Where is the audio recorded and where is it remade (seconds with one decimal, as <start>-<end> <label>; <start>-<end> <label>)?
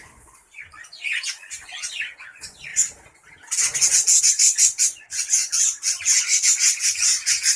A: 0.0-2.7 remade; 2.7-4.2 recorded; 4.2-5.4 remade; 5.4-6.1 recorded; 6.1-7.6 remade